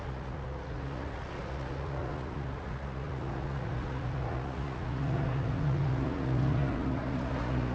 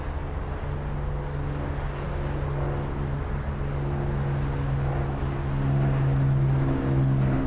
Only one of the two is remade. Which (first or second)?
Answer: first